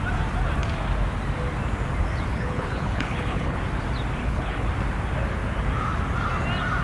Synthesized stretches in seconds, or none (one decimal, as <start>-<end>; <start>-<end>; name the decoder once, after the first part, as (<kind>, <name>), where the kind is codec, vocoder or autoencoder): 2.3-3.6 (codec, HILCodec); 4.2-4.7